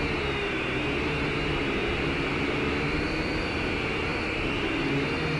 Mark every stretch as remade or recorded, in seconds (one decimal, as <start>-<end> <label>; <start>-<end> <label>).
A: 0.0-1.8 recorded; 1.8-4.8 remade; 4.8-5.4 recorded

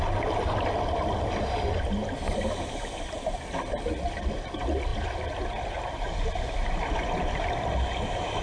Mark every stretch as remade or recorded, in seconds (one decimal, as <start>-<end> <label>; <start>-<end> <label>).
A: 0.0-8.4 recorded